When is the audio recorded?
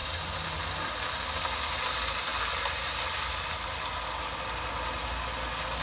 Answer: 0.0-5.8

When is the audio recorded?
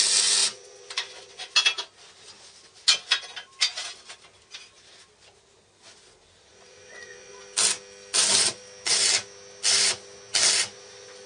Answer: 0.0-0.4; 1.5-6.5; 7.4-11.3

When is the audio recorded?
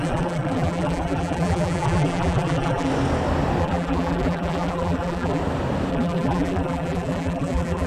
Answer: 2.9-3.6; 5.4-5.9